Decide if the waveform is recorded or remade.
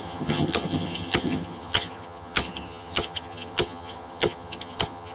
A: remade